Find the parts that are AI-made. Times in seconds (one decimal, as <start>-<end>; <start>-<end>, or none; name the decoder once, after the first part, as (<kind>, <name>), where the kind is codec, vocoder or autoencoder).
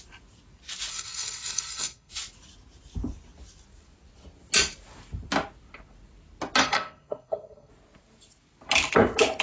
0.9-2.1 (codec, SNAC); 6.6-7.7